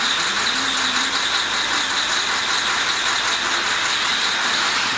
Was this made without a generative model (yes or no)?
yes